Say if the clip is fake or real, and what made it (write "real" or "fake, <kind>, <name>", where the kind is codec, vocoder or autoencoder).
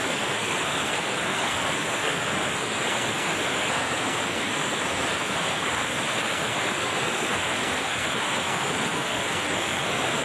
fake, codec, SNAC